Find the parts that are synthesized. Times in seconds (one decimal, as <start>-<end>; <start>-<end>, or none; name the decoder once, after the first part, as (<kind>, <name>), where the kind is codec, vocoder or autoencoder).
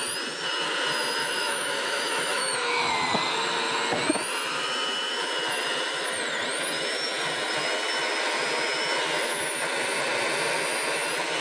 1.2-2.9 (autoencoder, DAC-VAE)